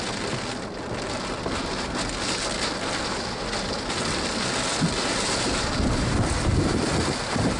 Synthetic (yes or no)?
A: no